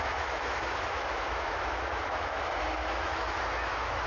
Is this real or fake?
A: fake